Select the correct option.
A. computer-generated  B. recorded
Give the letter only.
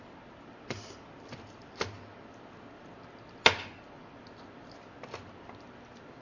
B